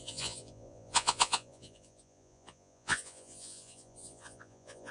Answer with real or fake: fake